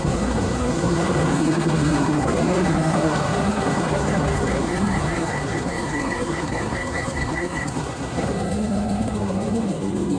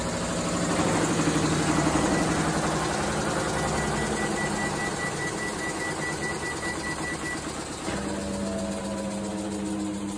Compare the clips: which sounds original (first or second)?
second